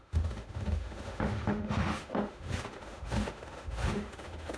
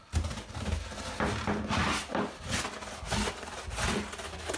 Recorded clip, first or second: second